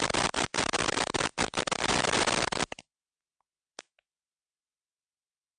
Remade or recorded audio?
recorded